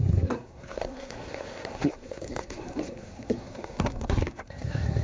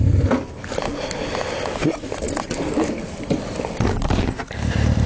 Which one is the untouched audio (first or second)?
second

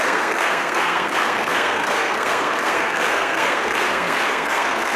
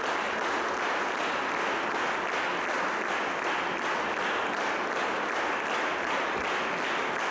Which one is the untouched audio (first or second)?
second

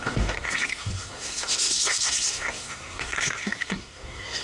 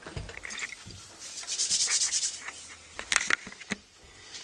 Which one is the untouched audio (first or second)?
second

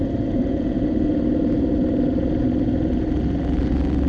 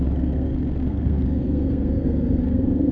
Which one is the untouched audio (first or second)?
first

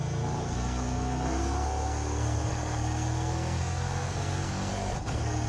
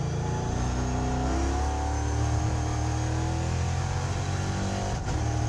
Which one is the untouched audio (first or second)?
second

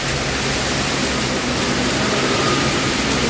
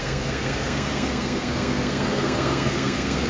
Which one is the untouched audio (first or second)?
first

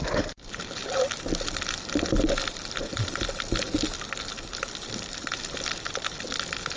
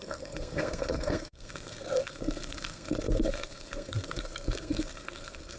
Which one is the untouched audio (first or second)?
first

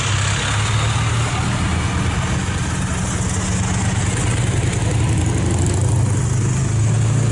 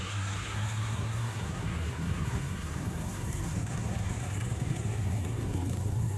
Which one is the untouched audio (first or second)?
first